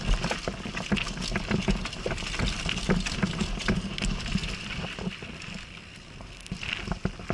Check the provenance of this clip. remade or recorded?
recorded